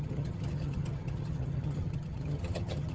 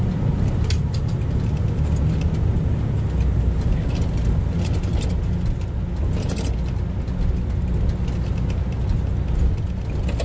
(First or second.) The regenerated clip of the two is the first